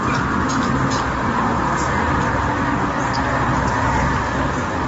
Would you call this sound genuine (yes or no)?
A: yes